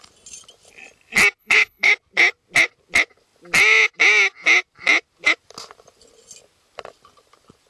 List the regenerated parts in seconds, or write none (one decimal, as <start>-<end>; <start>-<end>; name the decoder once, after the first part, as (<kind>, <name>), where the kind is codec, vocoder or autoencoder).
1.4-1.9 (codec, HILCodec)